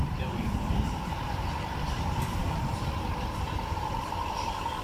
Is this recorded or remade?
remade